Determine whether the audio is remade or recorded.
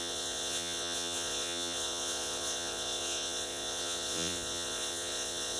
remade